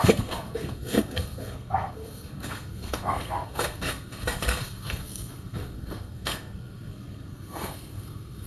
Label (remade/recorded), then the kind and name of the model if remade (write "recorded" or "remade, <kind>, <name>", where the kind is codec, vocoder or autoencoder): remade, codec, SNAC